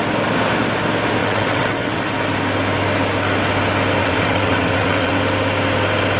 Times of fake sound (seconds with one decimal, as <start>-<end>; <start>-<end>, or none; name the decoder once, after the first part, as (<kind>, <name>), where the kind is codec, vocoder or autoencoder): 1.2-2.0 (vocoder, WaveNeXt); 4.0-5.1